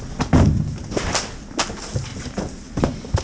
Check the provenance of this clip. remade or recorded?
recorded